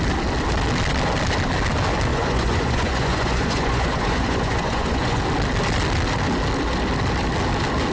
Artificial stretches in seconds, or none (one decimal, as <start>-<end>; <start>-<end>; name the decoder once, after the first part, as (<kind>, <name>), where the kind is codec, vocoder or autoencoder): 2.1-5.2 (vocoder, Vocos)